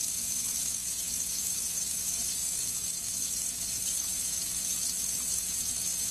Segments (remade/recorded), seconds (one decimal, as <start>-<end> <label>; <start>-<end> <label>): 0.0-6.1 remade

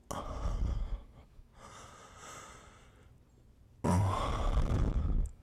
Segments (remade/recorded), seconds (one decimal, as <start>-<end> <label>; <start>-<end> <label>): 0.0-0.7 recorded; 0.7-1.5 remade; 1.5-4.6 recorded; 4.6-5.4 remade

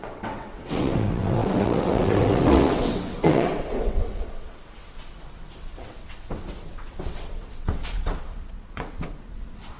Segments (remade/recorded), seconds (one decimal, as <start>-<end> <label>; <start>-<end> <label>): 0.0-9.8 remade